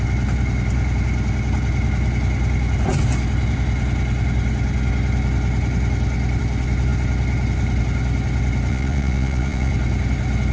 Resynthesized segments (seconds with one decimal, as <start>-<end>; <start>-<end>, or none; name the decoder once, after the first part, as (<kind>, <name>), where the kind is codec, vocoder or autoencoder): 8.7-9.7 (vocoder, Vocos)